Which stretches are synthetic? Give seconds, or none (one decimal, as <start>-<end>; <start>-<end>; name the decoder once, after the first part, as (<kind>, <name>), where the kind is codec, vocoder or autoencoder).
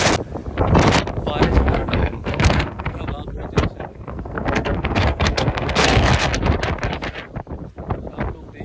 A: 1.4-3.0 (codec, SNAC); 3.9-6.1